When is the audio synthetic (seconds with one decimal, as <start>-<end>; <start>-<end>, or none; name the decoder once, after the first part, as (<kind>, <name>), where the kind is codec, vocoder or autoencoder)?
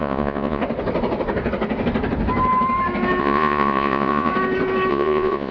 0.0-0.6 (vocoder, Vocos); 3.2-4.3; 4.9-5.5